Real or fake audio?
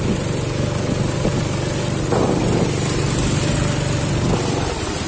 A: real